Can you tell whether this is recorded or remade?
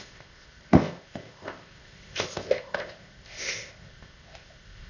remade